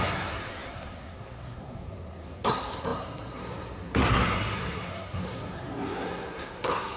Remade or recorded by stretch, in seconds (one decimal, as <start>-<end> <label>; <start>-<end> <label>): 0.0-7.0 remade